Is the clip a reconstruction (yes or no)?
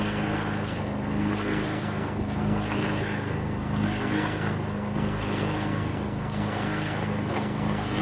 yes